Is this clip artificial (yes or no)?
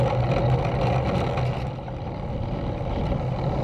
no